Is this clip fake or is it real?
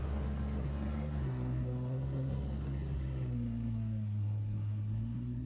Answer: fake